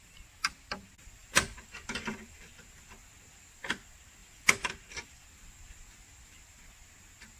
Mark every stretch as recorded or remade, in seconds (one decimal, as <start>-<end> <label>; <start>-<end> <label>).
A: 0.0-1.2 recorded; 1.2-3.6 remade; 3.6-4.2 recorded; 4.2-6.6 remade; 6.6-7.4 recorded